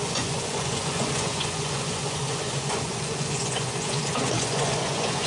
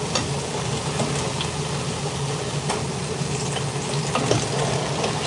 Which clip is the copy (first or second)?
first